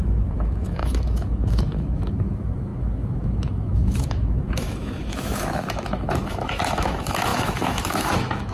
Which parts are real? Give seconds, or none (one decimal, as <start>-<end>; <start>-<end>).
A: none